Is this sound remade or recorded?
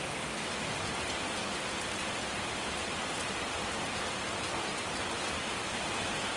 recorded